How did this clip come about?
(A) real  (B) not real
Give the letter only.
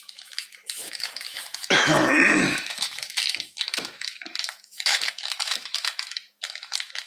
B